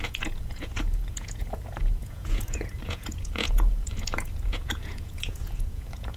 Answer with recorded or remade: remade